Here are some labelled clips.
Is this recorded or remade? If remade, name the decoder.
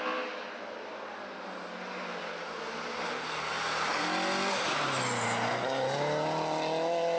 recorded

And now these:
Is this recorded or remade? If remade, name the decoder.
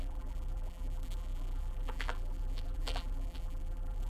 remade, vocoder, BigVGAN v2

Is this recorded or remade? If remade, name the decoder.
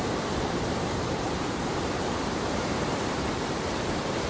remade, vocoder, BigVGAN v2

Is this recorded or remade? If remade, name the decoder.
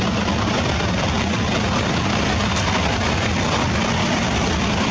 remade, vocoder, BigVGAN v2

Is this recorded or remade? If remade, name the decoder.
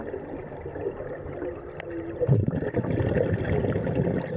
recorded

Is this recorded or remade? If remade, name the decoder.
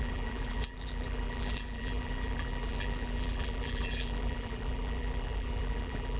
remade, vocoder, BigVGAN v2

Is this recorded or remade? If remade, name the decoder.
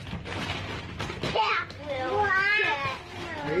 remade, vocoder, BigVGAN v2